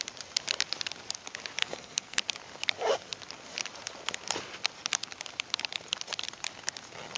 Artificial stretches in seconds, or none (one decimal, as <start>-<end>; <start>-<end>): 1.6-2.2